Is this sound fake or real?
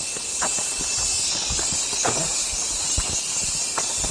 real